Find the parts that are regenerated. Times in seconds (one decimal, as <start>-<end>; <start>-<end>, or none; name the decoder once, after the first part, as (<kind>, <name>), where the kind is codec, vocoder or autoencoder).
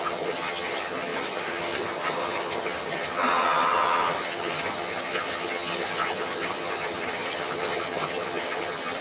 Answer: 0.0-9.0 (vocoder, HiFi-GAN)